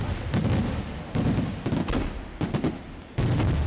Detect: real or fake real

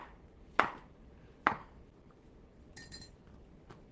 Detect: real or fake real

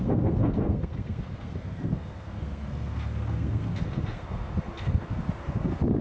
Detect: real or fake fake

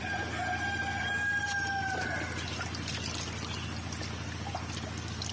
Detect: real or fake real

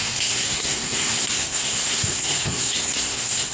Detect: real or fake fake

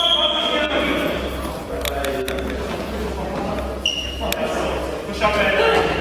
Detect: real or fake real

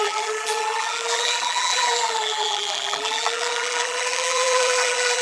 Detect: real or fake fake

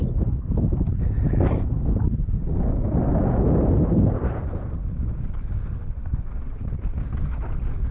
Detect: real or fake real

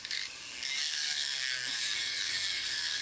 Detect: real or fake fake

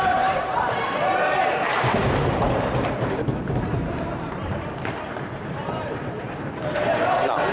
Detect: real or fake fake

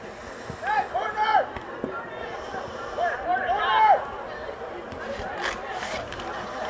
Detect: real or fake real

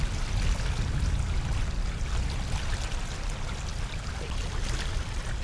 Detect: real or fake real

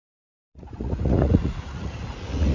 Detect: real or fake fake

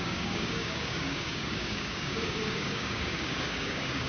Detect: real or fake fake